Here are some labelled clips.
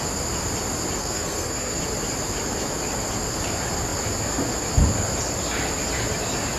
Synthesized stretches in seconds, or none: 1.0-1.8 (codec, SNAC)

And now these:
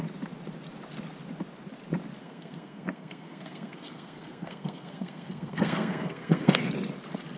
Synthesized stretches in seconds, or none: 2.2-6.6 (codec, SNAC)